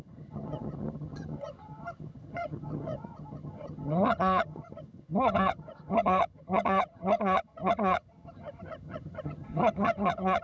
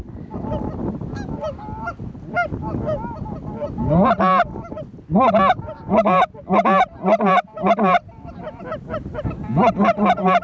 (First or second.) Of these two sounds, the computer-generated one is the first